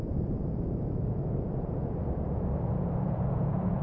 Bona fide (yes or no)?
no